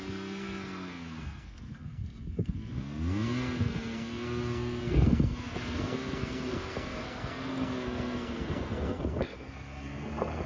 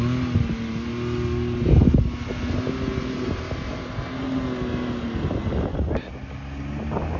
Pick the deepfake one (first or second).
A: first